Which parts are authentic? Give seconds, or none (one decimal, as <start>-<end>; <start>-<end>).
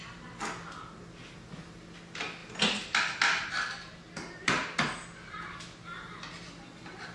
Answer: 0.0-7.1